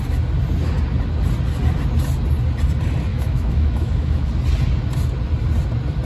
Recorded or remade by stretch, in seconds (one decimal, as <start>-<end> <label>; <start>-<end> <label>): 0.0-3.1 recorded; 3.1-4.3 remade; 4.3-6.1 recorded

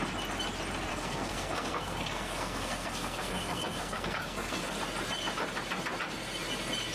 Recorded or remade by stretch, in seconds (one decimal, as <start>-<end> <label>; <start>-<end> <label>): 0.0-0.9 recorded; 0.9-4.7 remade; 4.7-6.9 recorded

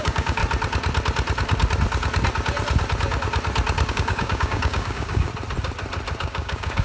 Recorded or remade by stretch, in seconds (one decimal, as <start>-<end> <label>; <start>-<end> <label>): 0.0-0.4 remade; 0.4-3.9 recorded; 3.9-5.3 remade; 5.3-6.2 recorded; 6.2-6.8 remade

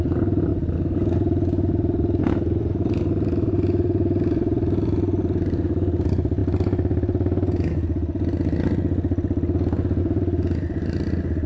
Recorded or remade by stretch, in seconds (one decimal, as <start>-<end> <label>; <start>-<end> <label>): 0.0-0.5 remade; 0.5-2.2 recorded; 2.2-6.4 remade; 6.4-10.0 recorded; 10.0-11.5 remade

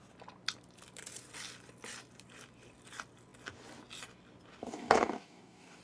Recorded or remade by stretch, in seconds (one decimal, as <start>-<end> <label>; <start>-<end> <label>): 0.0-4.6 recorded; 4.6-5.8 remade

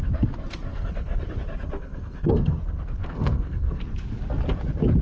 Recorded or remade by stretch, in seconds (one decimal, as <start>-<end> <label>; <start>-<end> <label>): 0.0-0.7 recorded; 0.7-1.2 remade; 1.2-1.8 recorded; 1.8-3.8 remade; 3.8-5.0 recorded

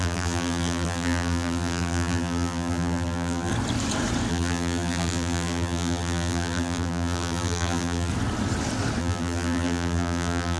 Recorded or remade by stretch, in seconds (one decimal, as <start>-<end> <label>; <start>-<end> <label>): 0.0-3.5 remade; 3.5-4.3 recorded; 4.3-8.1 remade; 8.1-9.0 recorded; 9.0-10.6 remade